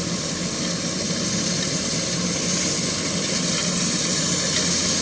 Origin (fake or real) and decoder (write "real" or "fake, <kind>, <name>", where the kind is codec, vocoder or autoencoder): real